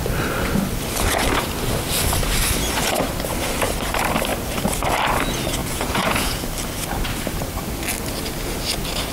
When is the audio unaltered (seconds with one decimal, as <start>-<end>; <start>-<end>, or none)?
0.0-5.6; 6.4-9.1